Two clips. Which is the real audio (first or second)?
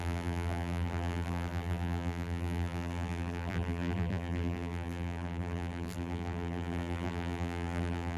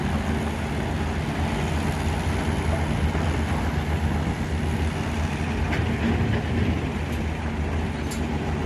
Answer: second